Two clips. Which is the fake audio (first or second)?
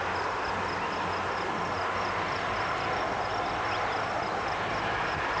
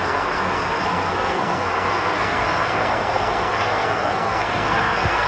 second